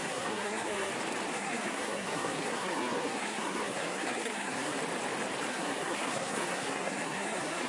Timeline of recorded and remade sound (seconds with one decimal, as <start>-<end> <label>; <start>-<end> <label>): 0.0-0.9 remade; 0.9-1.3 recorded; 1.3-4.8 remade; 4.8-5.5 recorded; 5.5-7.7 remade